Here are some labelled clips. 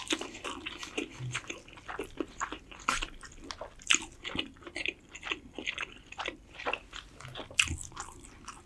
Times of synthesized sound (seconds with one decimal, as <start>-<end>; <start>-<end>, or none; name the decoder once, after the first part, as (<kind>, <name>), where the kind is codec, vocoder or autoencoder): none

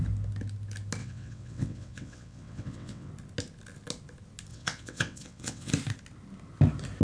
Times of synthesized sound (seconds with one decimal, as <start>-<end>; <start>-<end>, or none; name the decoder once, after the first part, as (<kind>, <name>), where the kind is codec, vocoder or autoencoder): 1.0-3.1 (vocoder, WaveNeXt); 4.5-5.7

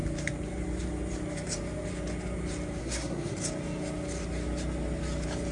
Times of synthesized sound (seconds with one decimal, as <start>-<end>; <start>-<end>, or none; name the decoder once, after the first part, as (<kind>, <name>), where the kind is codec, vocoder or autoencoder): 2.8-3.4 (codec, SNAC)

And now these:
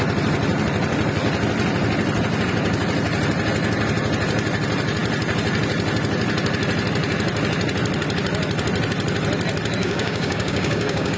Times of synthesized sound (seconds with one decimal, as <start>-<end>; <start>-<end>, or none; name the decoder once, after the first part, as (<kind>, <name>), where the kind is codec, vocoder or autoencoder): 9.8-11.2 (codec, DAC)

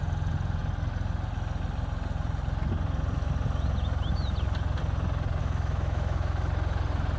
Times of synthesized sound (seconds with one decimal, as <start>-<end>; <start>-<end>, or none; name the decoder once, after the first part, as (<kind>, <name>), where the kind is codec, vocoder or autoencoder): 5.4-6.5 (autoencoder, DAC-VAE)

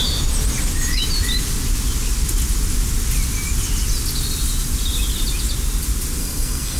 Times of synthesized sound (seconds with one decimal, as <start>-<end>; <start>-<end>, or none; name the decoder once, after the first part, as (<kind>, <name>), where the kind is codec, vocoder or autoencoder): 6.2-6.8 (codec, SNAC)

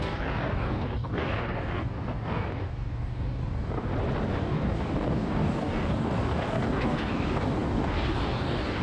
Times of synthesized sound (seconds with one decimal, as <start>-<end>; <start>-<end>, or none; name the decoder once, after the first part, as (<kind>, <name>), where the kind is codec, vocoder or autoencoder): 0.0-3.9 (codec, DAC); 4.4-8.8

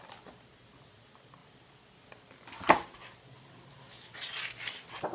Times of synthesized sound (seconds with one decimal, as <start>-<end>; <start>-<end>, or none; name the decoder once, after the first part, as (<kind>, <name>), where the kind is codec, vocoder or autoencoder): none